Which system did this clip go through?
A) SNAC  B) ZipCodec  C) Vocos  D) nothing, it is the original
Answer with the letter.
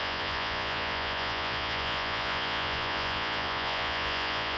C